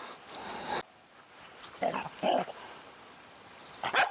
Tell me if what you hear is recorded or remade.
recorded